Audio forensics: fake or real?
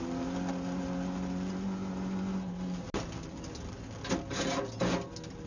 real